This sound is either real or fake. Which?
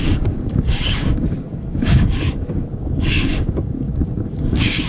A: fake